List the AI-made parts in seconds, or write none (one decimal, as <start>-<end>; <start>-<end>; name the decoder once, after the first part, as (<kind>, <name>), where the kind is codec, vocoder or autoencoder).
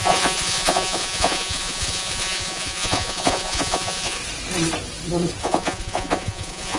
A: 0.0-4.2 (vocoder, Vocos); 5.4-6.8